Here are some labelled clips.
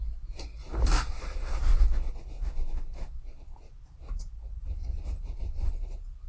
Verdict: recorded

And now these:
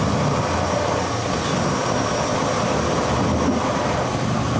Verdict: recorded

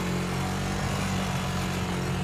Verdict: recorded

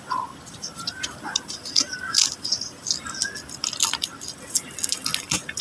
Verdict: recorded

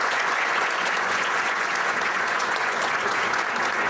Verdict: remade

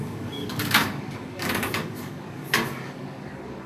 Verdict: remade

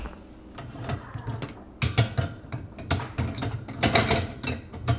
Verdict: recorded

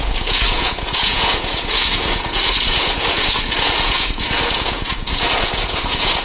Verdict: remade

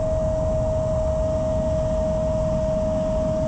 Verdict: recorded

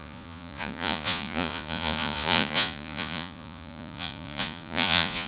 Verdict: remade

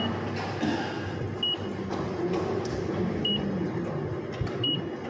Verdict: recorded